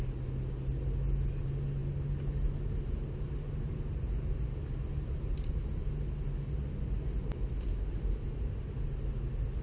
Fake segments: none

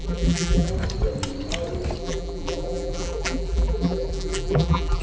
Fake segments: 0.0-0.7 (vocoder, BigVGAN v2); 2.0-5.0

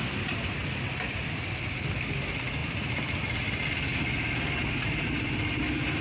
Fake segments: 0.6-1.9 (vocoder, BigVGAN v2); 2.6-3.2

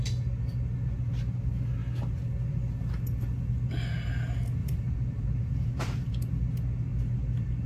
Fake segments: 4.6-6.1 (vocoder, BigVGAN v2)

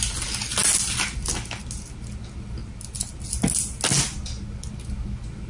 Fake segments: 2.6-3.1 (vocoder, BigVGAN v2)

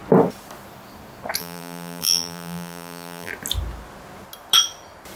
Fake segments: 1.4-3.3 (vocoder, BigVGAN v2)

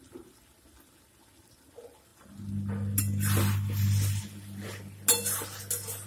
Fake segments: none